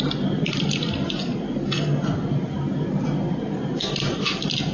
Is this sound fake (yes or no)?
no